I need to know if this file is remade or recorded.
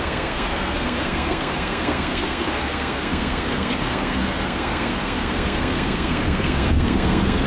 remade